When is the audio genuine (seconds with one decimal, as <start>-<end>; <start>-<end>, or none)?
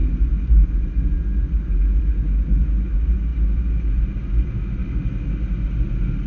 0.0-6.3